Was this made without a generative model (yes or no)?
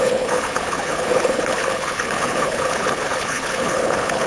no